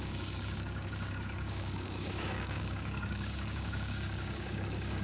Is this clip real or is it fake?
fake